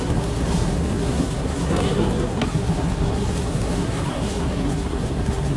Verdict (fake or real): fake